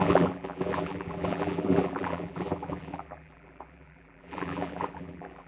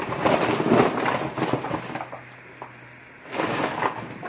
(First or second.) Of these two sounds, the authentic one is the second